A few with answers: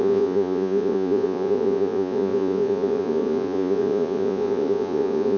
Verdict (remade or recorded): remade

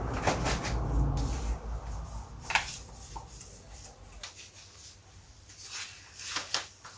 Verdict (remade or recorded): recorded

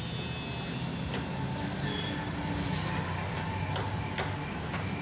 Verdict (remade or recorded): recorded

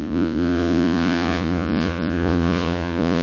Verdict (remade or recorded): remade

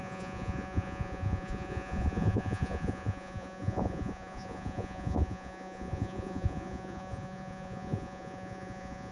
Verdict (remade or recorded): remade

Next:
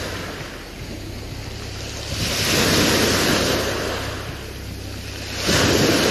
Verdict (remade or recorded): recorded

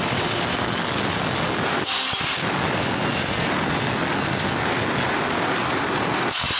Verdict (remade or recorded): recorded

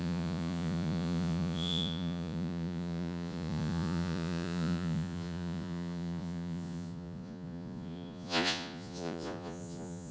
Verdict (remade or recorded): remade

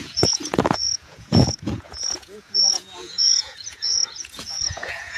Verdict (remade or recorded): remade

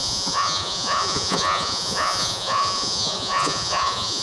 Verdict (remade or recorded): remade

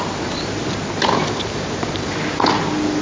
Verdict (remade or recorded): recorded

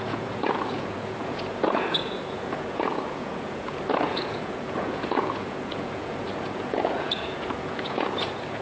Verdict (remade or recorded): remade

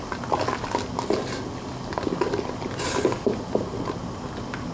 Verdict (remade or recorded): recorded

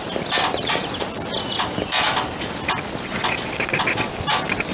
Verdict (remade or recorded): recorded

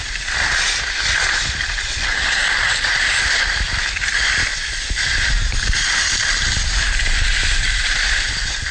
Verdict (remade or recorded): recorded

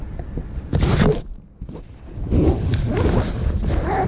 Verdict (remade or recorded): recorded